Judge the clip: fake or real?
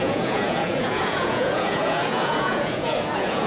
fake